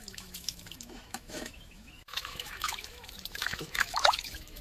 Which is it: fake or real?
fake